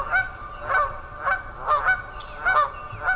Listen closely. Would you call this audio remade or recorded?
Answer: recorded